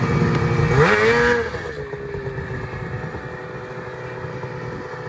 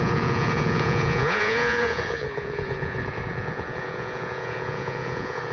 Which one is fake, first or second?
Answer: second